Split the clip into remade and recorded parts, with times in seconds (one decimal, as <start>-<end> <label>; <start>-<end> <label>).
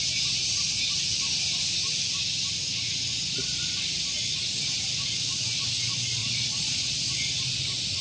0.0-6.2 recorded; 6.2-6.9 remade; 6.9-8.0 recorded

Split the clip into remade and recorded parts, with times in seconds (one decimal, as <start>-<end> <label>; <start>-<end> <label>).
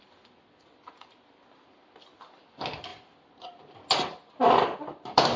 0.0-5.4 recorded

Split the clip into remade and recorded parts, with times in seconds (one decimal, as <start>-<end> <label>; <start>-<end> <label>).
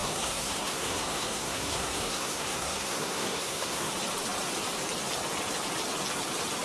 0.0-3.9 remade; 3.9-6.6 recorded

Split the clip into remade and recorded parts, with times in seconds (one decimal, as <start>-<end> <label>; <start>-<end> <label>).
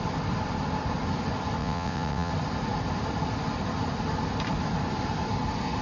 0.0-1.6 recorded; 1.6-2.3 remade; 2.3-5.8 recorded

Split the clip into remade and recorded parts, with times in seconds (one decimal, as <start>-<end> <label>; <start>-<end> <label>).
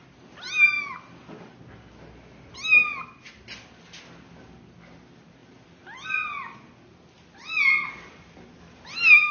0.0-9.3 recorded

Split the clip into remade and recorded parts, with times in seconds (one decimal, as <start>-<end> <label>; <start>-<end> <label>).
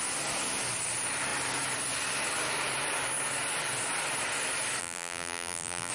0.0-4.8 recorded; 4.8-5.9 remade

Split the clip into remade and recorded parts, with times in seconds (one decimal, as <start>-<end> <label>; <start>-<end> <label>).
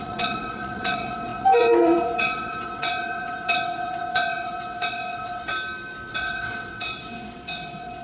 0.0-5.5 remade; 5.5-6.1 recorded; 6.1-8.0 remade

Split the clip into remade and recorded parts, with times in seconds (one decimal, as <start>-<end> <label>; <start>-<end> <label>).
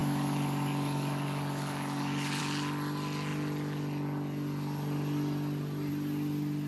0.0-2.4 remade; 2.4-6.7 recorded